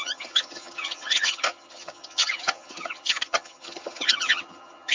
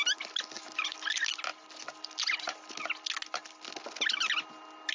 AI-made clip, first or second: first